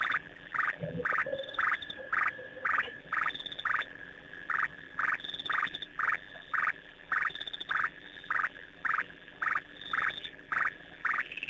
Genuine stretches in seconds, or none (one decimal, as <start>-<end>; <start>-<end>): 1.2-3.0